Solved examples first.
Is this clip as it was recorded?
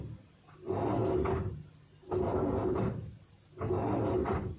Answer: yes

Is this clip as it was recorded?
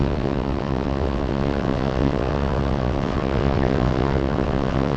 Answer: no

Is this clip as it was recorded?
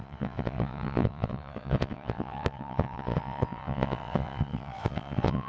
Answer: no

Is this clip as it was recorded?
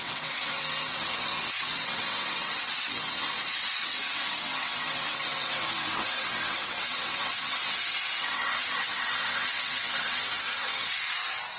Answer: no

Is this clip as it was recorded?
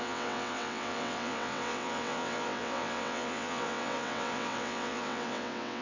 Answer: no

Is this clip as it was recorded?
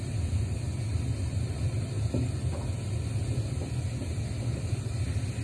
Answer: yes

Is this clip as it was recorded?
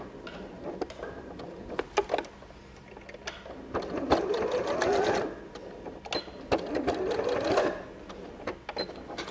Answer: yes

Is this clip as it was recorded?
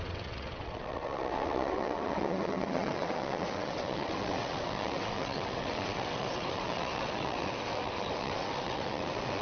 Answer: no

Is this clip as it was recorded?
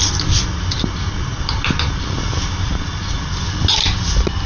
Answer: yes